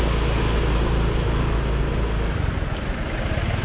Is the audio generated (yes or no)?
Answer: no